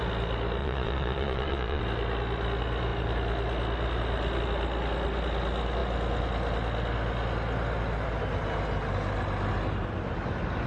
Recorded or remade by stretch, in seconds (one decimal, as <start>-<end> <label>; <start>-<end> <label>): 0.0-0.6 recorded; 0.6-1.8 remade; 1.8-10.7 recorded